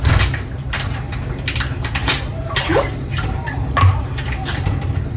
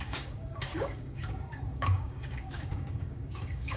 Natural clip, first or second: first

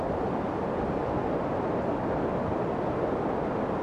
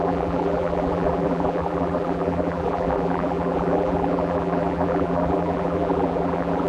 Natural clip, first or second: first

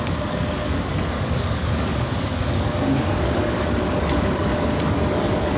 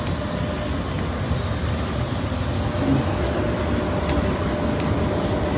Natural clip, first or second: second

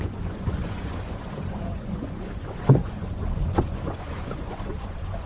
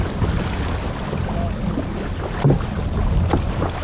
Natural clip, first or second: second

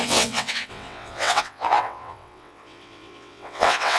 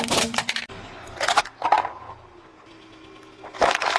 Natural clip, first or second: second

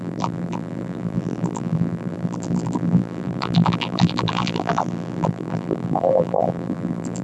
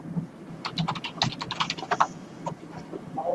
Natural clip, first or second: second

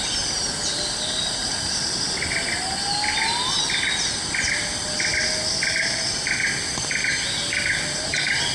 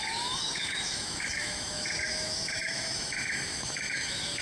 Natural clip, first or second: first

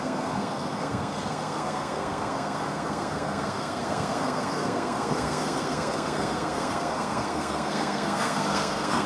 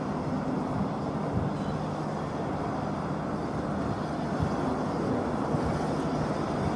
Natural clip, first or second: second